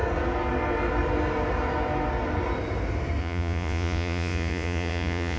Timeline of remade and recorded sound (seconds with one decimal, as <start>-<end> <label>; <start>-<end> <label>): 0.0-3.2 recorded; 3.2-5.4 remade